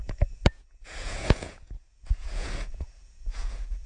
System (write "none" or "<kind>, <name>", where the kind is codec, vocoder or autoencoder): vocoder, Vocos